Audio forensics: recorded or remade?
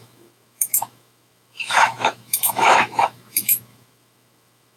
remade